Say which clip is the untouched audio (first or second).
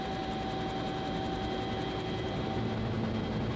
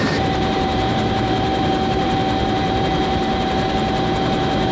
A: first